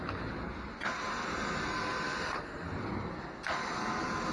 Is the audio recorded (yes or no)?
yes